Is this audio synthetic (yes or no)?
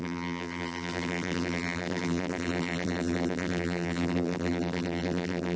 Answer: yes